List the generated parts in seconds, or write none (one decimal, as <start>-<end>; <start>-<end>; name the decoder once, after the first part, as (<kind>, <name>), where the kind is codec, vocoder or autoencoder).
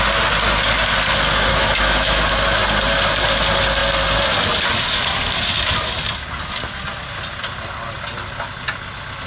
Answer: 1.5-2.3 (autoencoder, DAC-VAE)